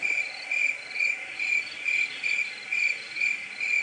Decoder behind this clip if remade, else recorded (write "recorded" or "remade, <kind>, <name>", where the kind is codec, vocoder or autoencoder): recorded